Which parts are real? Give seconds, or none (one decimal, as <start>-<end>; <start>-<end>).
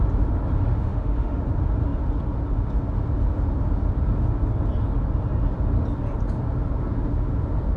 0.0-0.7; 1.4-7.8